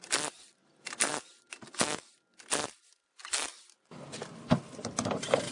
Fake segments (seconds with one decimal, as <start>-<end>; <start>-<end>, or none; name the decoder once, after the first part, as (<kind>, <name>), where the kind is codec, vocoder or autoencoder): none